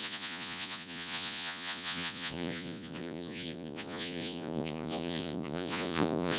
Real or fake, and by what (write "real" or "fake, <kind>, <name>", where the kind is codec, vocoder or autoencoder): fake, vocoder, Vocos